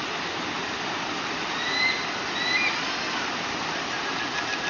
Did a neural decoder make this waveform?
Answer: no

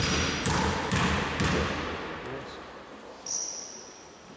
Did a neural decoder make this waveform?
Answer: no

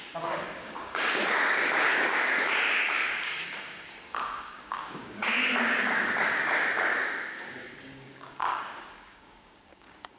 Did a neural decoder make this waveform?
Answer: yes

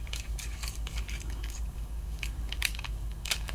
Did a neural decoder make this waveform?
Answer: yes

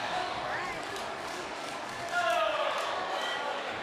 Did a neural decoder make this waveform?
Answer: yes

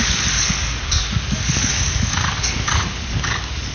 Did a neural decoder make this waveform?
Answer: yes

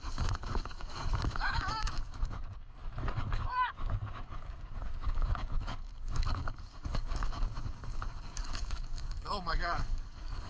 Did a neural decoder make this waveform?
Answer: yes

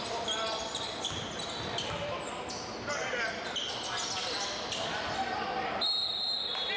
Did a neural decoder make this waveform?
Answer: no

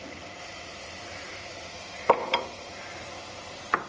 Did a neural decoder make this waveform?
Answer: no